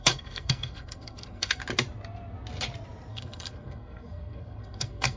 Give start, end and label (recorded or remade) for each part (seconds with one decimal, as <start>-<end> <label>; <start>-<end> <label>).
0.0-1.6 remade; 1.6-3.1 recorded; 3.1-5.2 remade